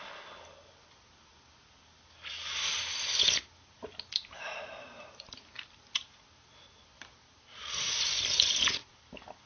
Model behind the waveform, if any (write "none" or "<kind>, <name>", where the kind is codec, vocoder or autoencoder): none